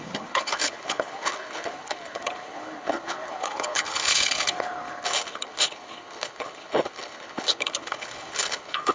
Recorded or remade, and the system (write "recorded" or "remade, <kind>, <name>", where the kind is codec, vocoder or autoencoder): remade, codec, HILCodec